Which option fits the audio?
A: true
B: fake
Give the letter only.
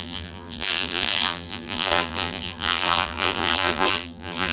B